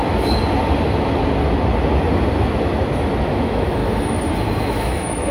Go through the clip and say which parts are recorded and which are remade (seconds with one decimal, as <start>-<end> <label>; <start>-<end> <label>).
0.0-3.2 recorded; 3.2-3.8 remade; 3.8-4.6 recorded; 4.6-5.3 remade